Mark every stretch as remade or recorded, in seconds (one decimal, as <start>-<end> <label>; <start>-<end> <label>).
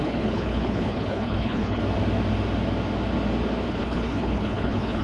0.0-1.8 remade; 1.8-3.7 recorded; 3.7-5.0 remade